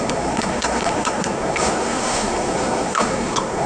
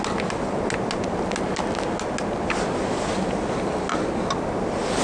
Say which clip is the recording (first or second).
second